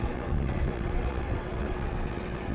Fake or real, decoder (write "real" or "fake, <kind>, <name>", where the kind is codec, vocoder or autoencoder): fake, vocoder, WaveNeXt